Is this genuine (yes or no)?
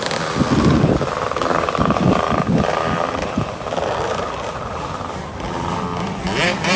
no